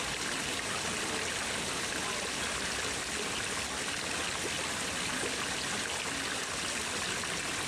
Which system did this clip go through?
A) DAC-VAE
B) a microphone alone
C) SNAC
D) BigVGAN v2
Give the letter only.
B